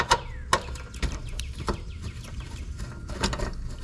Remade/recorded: recorded